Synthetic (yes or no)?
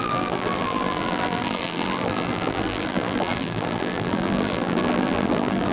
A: yes